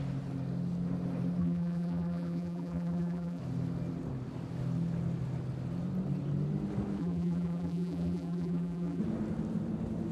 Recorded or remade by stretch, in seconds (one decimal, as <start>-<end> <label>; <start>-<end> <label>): 0.0-1.4 recorded; 1.4-3.4 remade; 3.4-7.0 recorded; 7.0-9.0 remade; 9.0-10.1 recorded